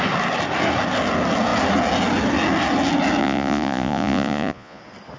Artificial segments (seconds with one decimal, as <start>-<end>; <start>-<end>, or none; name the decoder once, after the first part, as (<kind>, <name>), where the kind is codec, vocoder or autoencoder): 3.2-4.8 (vocoder, Vocos)